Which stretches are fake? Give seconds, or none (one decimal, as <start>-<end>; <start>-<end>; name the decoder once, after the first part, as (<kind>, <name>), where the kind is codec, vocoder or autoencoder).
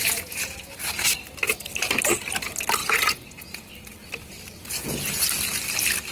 0.0-0.7 (vocoder, Vocos); 2.8-3.7; 4.6-5.2